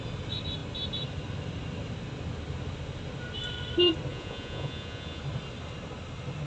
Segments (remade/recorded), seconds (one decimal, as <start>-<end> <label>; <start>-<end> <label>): 0.0-4.1 recorded; 4.1-5.2 remade; 5.2-6.5 recorded